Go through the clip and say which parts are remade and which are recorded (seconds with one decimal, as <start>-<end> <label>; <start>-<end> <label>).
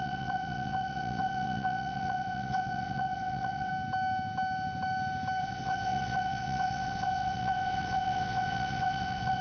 0.0-3.7 remade; 3.7-5.4 recorded; 5.4-9.4 remade